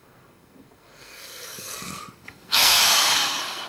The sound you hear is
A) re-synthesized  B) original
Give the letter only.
A